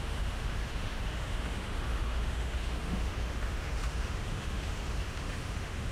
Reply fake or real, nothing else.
fake